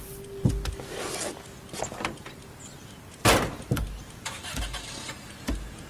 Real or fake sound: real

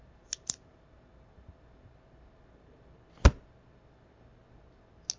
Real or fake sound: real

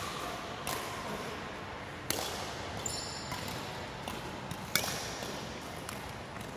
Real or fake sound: real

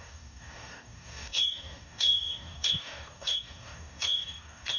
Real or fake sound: fake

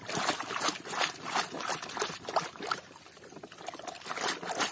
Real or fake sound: real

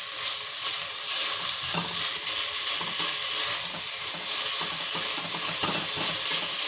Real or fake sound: real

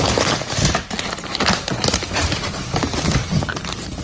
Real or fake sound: real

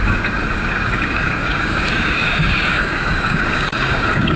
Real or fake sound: fake